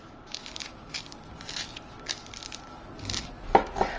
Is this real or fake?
real